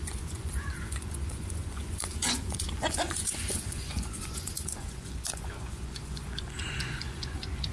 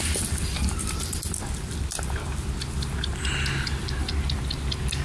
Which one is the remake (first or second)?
first